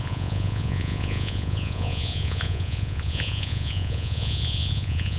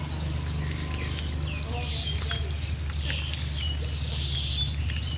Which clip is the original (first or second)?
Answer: second